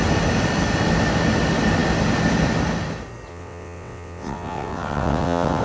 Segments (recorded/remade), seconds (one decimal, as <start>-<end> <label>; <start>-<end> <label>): 0.0-3.3 recorded; 3.3-5.6 remade